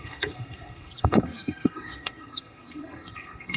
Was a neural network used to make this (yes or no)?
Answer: yes